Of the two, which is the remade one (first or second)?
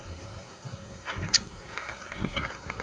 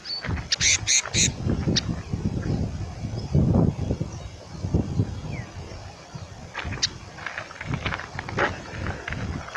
first